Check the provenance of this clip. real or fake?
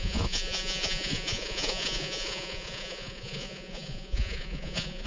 fake